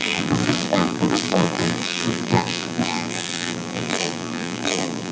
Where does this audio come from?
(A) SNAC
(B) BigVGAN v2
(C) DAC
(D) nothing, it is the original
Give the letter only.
B